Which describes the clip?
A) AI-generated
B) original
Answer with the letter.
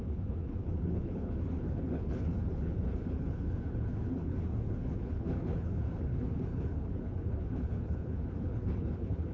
A